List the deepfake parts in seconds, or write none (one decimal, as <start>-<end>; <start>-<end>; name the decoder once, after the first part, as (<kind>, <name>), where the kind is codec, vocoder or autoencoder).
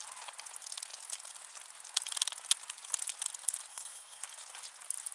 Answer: 3.7-4.2 (codec, SNAC)